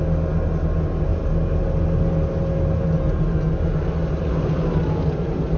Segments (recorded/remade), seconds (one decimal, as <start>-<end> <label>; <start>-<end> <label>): 0.0-5.6 recorded